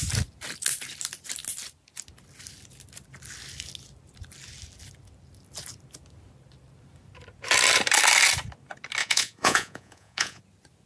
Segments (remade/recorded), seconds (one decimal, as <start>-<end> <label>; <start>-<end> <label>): 0.0-9.0 recorded; 9.0-10.4 remade; 10.4-10.9 recorded